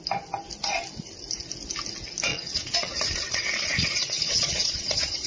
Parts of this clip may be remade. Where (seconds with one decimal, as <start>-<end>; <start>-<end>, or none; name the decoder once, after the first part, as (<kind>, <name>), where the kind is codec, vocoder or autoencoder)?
2.3-5.3 (vocoder, Vocos)